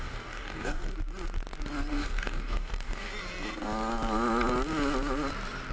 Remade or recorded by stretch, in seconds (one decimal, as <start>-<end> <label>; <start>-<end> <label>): 0.0-0.9 remade; 0.9-1.9 recorded; 1.9-3.1 remade; 3.1-5.7 recorded